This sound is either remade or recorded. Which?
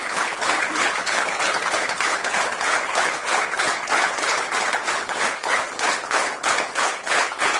remade